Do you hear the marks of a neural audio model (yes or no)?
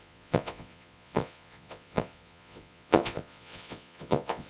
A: yes